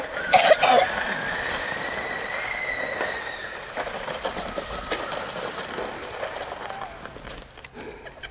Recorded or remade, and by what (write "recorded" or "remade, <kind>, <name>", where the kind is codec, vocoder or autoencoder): recorded